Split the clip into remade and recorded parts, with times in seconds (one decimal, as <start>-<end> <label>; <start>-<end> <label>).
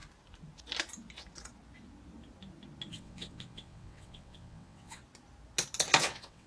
0.0-2.9 recorded; 2.9-5.0 remade; 5.0-6.0 recorded; 6.0-6.5 remade